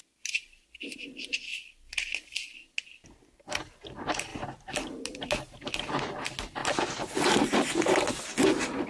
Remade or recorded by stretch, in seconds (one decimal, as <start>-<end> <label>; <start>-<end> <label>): 0.0-8.9 recorded